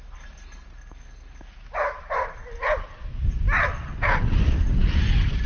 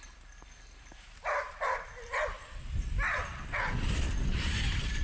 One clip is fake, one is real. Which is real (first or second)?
first